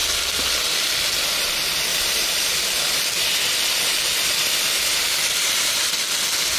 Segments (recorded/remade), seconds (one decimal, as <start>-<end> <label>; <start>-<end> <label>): 0.0-1.5 remade; 1.5-1.9 recorded; 1.9-5.9 remade; 5.9-6.6 recorded